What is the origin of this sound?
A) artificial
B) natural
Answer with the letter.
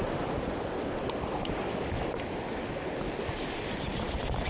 A